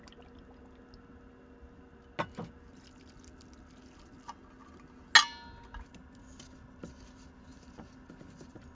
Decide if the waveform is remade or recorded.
recorded